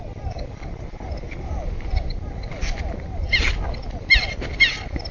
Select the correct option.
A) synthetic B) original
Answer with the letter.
B